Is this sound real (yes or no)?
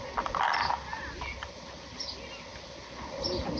yes